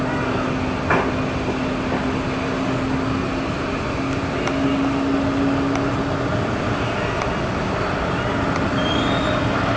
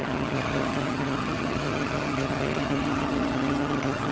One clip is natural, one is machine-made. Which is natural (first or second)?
first